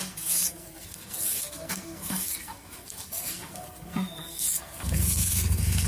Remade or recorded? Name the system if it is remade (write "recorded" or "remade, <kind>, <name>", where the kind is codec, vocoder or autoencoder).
remade, codec, SNAC